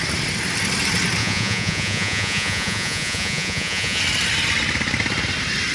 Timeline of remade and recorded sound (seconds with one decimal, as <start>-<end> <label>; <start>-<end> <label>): 0.0-1.2 recorded; 1.2-4.0 remade; 4.0-5.7 recorded